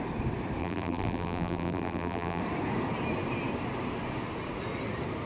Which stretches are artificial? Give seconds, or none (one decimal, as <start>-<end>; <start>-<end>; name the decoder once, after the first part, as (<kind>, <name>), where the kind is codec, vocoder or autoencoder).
0.6-2.4 (vocoder, BigVGAN v2)